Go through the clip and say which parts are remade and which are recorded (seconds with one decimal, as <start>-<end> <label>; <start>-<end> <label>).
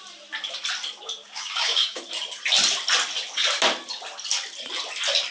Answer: 0.0-1.2 recorded; 1.2-2.0 remade; 2.0-5.3 recorded